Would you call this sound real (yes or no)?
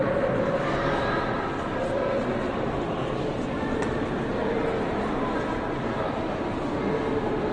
yes